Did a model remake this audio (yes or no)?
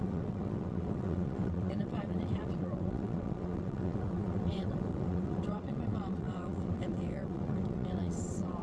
yes